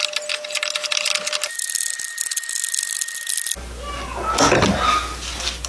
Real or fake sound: real